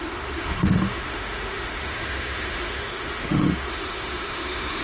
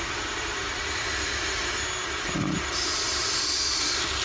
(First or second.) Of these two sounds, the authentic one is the second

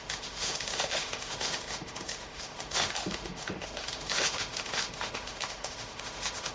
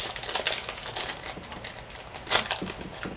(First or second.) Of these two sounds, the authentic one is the second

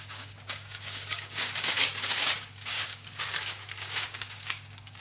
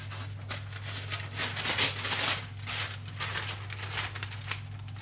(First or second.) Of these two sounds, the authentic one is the second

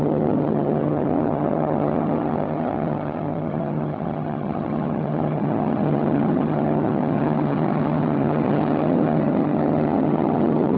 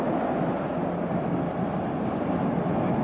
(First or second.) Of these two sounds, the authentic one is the second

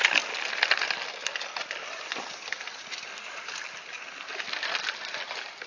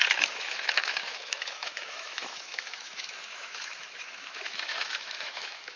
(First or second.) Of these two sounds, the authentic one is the first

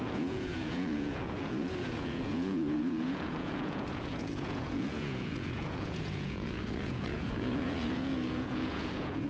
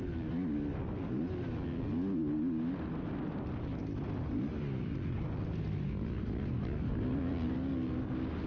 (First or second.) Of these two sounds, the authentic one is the second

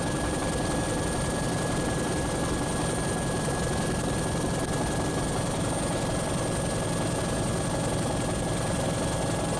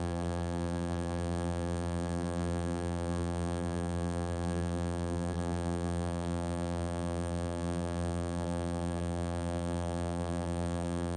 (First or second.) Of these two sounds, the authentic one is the first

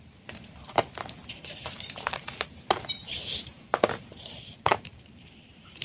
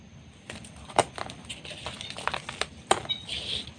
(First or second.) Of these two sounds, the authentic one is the second